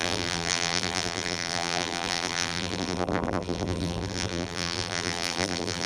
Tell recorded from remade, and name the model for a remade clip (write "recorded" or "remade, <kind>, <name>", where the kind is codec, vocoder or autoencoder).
remade, vocoder, BigVGAN v2